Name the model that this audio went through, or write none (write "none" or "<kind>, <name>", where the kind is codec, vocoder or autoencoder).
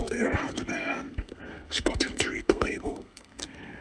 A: codec, SNAC